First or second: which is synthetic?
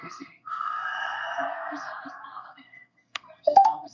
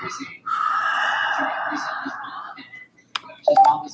first